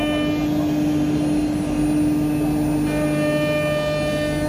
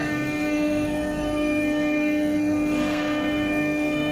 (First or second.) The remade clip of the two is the second